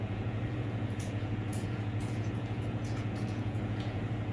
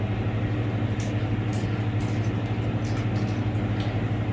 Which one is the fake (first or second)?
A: first